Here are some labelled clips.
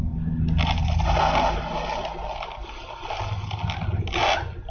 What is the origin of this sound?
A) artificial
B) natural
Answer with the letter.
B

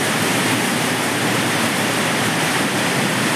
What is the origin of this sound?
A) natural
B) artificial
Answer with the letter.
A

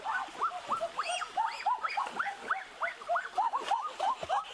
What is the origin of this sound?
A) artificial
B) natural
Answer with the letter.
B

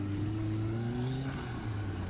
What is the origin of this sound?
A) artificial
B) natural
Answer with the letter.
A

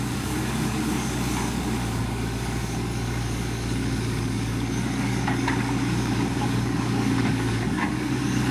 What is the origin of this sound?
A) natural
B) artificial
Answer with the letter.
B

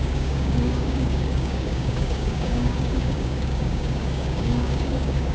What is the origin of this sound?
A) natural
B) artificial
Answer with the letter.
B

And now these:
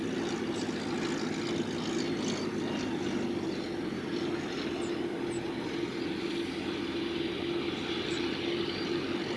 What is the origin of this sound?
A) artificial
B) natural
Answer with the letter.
B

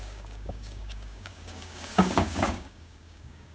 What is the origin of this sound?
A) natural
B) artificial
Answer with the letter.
B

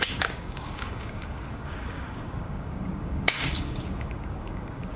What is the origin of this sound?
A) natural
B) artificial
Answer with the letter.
B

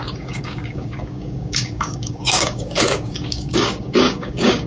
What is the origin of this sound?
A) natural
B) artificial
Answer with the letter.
B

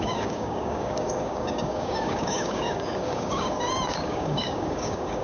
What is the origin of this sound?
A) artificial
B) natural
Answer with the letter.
A